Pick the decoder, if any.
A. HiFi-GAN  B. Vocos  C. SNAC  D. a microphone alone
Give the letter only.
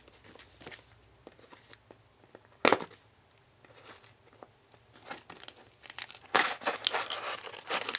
D